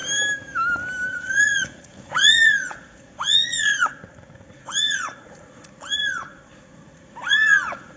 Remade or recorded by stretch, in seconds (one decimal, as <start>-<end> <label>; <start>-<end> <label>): 0.0-1.1 recorded; 1.1-8.0 remade